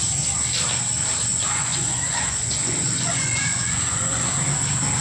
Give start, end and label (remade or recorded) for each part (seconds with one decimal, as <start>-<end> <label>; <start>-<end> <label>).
0.0-1.3 recorded; 1.3-4.3 remade; 4.3-5.0 recorded